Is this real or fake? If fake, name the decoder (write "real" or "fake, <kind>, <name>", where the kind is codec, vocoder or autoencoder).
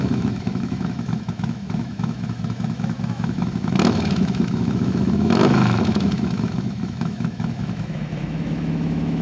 fake, autoencoder, DAC-VAE